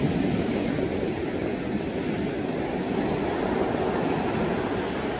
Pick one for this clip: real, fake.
real